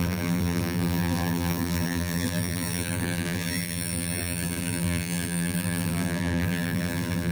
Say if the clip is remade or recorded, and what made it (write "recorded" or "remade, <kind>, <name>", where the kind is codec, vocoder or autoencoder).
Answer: remade, vocoder, BigVGAN v2